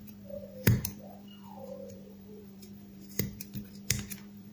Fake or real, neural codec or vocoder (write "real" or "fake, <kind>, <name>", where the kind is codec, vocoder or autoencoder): fake, vocoder, BigVGAN v2